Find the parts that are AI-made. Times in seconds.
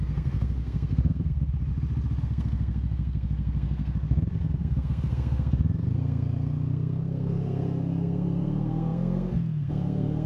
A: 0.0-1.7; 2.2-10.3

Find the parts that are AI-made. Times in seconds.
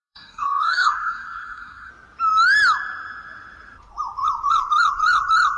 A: 0.0-1.9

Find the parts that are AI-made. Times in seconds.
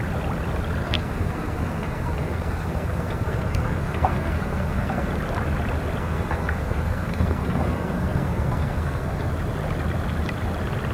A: 0.8-5.1; 6.0-9.3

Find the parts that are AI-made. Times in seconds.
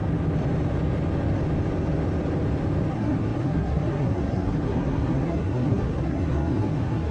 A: 2.9-7.1